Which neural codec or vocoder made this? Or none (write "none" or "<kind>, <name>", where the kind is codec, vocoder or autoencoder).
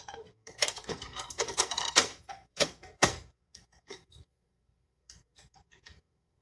codec, SNAC